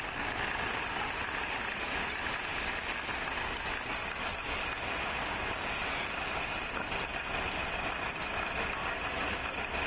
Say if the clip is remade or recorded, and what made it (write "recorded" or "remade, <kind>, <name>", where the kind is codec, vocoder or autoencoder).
recorded